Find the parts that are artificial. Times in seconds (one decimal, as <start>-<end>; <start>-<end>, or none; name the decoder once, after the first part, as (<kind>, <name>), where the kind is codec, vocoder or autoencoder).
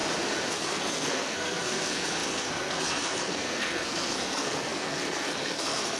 0.5-6.0 (codec, SNAC)